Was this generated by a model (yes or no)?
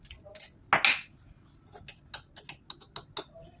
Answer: no